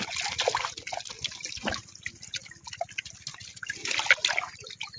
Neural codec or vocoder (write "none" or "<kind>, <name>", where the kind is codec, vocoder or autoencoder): none